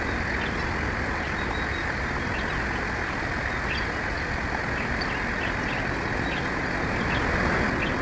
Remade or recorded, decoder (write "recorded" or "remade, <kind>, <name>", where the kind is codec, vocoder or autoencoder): recorded